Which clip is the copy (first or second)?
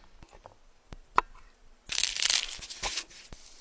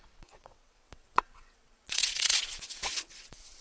second